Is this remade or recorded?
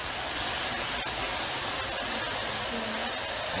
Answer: recorded